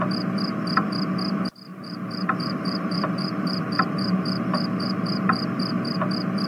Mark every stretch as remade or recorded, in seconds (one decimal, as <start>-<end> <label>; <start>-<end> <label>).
0.0-1.7 recorded; 1.7-5.6 remade; 5.6-6.5 recorded